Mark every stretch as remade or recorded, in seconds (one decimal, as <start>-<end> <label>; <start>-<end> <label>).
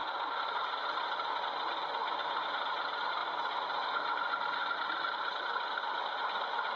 0.0-4.6 recorded; 4.6-5.8 remade; 5.8-6.8 recorded